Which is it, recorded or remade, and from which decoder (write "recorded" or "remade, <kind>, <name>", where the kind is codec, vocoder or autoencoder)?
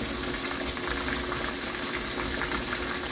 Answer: recorded